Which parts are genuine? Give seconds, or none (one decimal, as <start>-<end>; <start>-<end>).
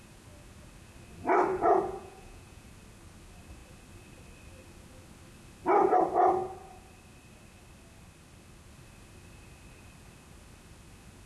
0.0-1.5; 2.7-11.3